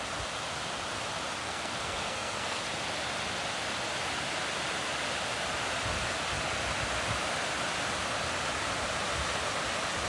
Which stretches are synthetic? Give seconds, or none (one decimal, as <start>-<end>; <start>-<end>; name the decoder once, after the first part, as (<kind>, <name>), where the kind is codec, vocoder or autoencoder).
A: 1.4-2.6 (codec, SNAC)